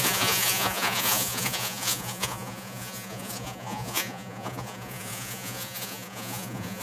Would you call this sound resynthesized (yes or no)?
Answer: yes